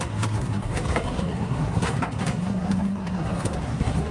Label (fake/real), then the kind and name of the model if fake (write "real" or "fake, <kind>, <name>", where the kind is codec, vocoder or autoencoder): fake, codec, SNAC